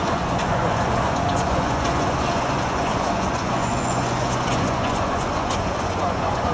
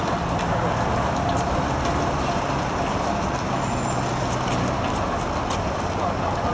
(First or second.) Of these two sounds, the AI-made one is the first